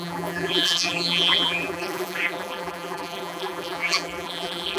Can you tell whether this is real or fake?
fake